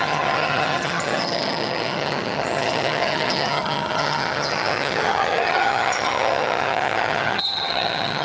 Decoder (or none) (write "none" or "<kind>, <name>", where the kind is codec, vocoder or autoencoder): vocoder, HiFi-GAN